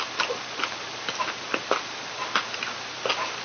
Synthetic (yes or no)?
no